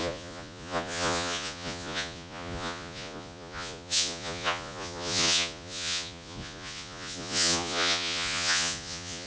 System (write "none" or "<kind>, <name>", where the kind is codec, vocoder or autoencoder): vocoder, Vocos